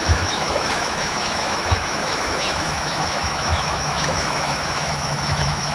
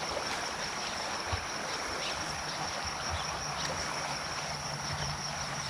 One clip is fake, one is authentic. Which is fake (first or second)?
first